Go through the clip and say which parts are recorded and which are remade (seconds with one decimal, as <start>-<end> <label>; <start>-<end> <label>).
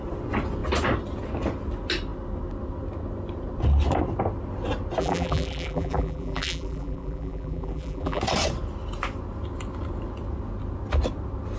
0.0-5.0 recorded; 5.0-8.2 remade; 8.2-11.6 recorded